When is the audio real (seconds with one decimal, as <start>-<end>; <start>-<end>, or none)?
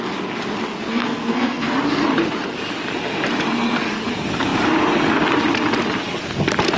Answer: 0.0-0.9; 1.8-6.8